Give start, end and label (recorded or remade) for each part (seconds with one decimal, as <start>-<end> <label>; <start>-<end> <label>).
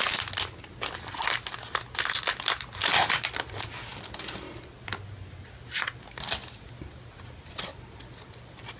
0.0-3.9 recorded; 3.9-4.7 remade; 4.7-8.8 recorded